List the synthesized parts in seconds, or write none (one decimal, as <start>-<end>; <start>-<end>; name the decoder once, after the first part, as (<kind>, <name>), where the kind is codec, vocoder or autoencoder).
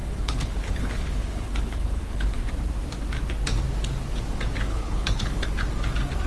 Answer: 0.0-2.5 (codec, HILCodec); 4.7-5.5